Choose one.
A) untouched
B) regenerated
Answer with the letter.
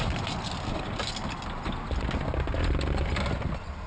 A